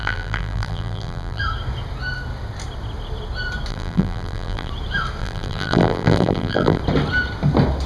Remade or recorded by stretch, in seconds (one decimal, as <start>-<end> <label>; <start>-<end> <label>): 0.0-1.4 remade; 1.4-3.7 recorded; 3.7-4.7 remade; 4.7-5.2 recorded; 5.2-6.8 remade; 6.8-7.9 recorded